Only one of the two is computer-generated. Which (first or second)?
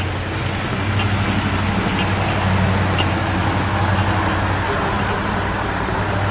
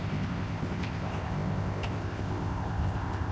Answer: second